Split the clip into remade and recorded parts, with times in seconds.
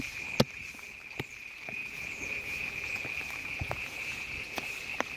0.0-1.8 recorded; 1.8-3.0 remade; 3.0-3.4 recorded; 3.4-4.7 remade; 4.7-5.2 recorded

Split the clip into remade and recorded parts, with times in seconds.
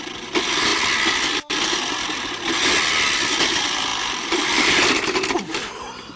0.0-3.9 recorded; 3.9-5.7 remade; 5.7-6.2 recorded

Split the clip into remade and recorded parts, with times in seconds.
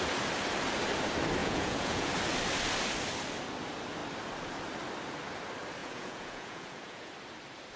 0.0-1.4 recorded; 1.4-2.1 remade; 2.1-5.8 recorded; 5.8-7.1 remade; 7.1-7.8 recorded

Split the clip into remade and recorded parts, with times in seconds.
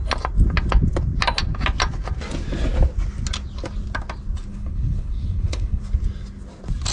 0.0-4.5 recorded; 4.5-5.8 remade; 5.8-6.9 recorded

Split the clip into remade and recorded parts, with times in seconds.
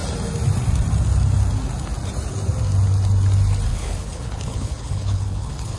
0.0-3.7 recorded; 3.7-5.8 remade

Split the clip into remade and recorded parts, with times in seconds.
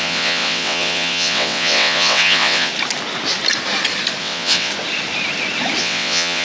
0.0-2.7 remade; 2.7-4.2 recorded; 4.2-4.7 remade; 4.7-5.8 recorded; 5.8-6.4 remade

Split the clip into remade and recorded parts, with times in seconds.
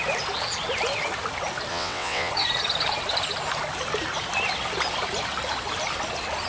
0.0-1.7 recorded; 1.7-2.3 remade; 2.3-6.5 recorded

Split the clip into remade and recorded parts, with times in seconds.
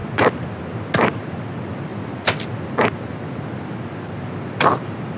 0.0-5.2 recorded